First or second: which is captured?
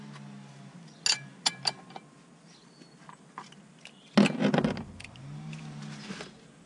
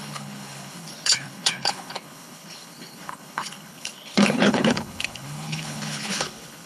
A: first